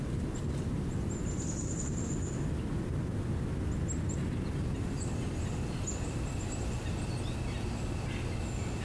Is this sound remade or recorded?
recorded